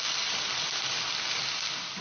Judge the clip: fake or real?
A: real